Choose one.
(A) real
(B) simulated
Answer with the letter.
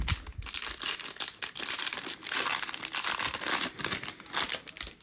A